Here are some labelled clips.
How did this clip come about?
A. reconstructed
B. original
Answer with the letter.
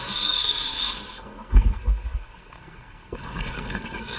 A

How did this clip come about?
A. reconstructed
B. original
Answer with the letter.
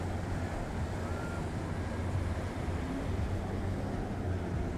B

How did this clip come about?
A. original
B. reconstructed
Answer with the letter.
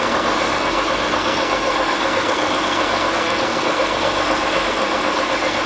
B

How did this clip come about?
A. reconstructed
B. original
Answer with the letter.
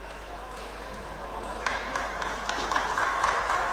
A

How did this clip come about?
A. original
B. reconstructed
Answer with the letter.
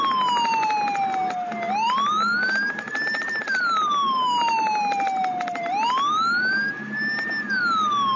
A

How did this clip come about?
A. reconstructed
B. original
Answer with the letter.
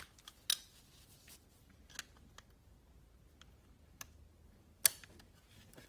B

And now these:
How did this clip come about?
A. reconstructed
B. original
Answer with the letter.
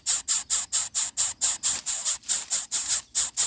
B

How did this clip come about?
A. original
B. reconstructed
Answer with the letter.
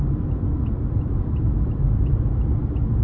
A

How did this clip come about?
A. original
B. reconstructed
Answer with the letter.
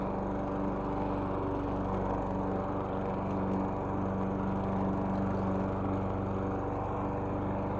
A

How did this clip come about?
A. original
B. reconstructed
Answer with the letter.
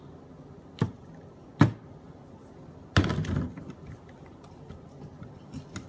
A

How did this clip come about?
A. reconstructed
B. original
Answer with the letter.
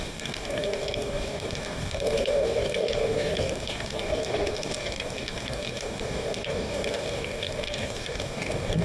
A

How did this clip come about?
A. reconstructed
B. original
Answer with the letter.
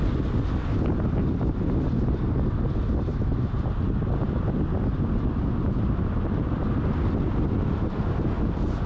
B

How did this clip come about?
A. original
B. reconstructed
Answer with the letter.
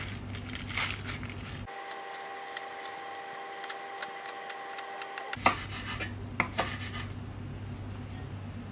A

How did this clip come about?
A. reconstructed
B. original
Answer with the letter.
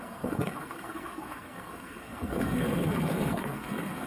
A